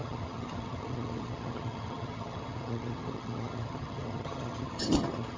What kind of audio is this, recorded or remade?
remade